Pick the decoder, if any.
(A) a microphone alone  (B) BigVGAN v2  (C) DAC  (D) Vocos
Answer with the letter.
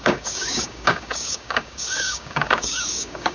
C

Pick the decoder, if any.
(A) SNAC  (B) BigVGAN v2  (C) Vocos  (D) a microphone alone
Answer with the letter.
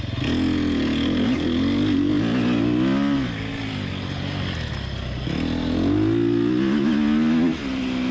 D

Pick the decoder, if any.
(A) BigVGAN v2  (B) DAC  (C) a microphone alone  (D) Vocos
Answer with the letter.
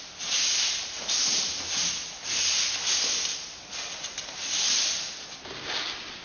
C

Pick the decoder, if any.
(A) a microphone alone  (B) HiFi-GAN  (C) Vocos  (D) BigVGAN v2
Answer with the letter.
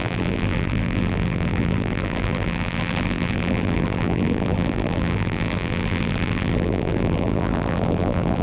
D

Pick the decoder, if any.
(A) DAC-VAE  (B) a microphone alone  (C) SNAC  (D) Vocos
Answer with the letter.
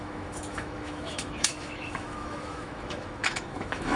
A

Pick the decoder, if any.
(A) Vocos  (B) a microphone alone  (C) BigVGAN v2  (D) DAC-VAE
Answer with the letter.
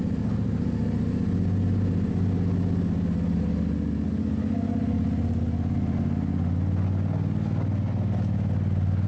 B